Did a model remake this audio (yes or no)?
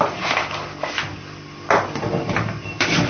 no